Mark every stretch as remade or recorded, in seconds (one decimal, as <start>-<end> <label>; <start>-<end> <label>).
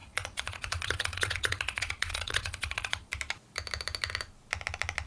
0.0-3.1 remade; 3.1-5.1 recorded